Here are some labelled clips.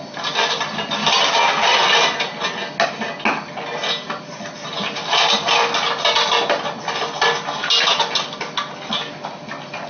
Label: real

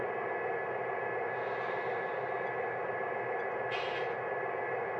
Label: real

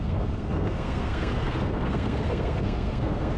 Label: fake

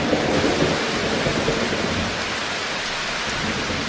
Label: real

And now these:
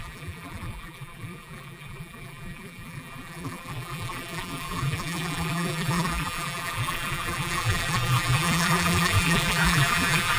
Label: fake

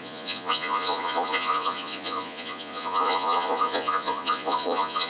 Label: fake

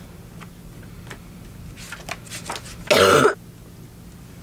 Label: real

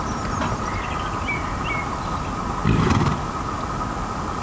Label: real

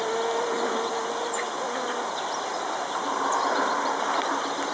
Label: real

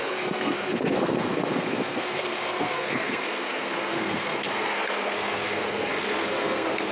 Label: fake